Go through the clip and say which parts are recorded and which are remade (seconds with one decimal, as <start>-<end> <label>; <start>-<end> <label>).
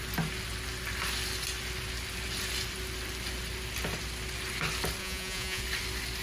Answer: 0.0-5.0 recorded; 5.0-5.6 remade; 5.6-6.2 recorded